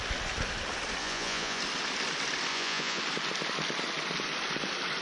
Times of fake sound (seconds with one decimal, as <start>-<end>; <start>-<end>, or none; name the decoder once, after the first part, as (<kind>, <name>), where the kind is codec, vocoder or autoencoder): 1.0-1.6 (vocoder, Vocos); 2.5-3.0